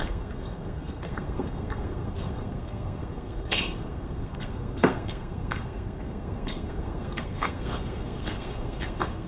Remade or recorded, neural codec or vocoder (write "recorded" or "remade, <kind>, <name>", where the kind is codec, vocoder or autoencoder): remade, codec, SNAC